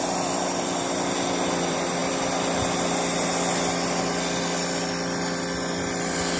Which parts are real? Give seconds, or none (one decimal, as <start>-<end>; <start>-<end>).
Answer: 0.0-6.4